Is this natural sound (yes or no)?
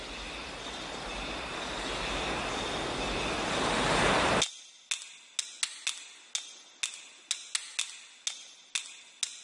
yes